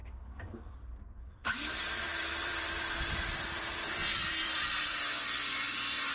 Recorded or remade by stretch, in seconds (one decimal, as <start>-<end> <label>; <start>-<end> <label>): 0.0-1.3 recorded; 1.3-6.1 remade